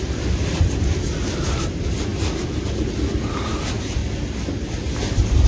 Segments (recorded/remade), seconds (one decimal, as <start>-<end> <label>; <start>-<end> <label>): 0.0-5.5 recorded